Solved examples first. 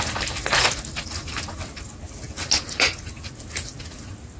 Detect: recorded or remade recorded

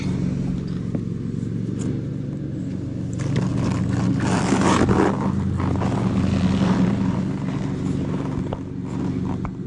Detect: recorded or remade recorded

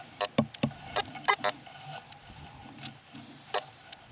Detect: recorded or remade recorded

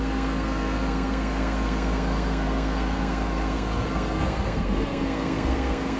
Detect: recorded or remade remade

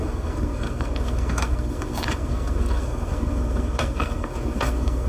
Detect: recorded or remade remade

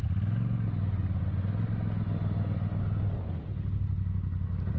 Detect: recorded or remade recorded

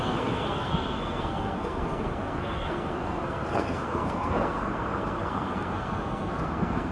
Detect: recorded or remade remade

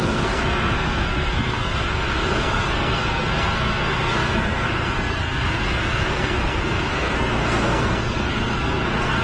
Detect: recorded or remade remade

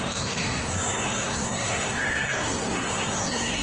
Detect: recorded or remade remade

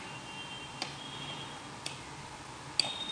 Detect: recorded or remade recorded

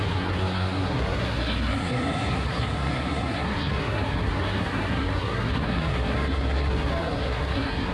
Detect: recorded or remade remade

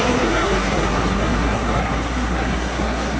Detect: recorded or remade remade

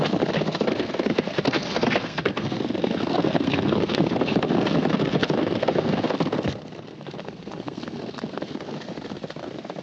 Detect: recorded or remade remade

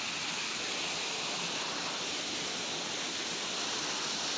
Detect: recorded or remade recorded